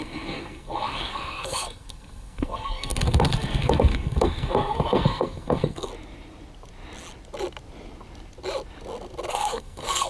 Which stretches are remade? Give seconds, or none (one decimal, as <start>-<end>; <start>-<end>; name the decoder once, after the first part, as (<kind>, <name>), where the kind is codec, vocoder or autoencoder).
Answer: 0.0-5.9 (codec, SNAC); 9.3-10.1